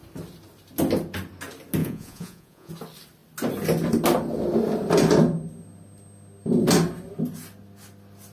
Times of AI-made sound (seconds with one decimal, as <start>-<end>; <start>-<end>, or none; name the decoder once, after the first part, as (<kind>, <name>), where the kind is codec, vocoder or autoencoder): 1.8-2.7 (vocoder, Vocos)